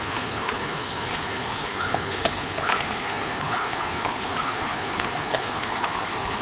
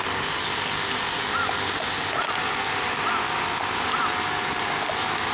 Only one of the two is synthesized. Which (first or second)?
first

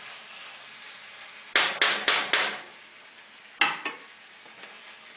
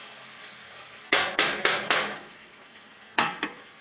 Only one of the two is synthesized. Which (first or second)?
second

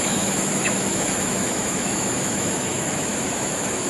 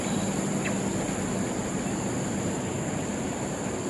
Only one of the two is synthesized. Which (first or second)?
first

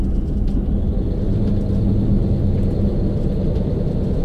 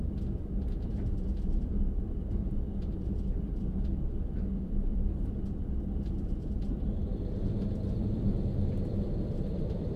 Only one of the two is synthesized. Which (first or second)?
second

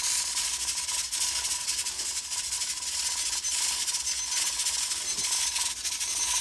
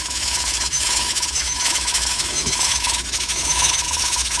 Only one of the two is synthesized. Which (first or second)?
second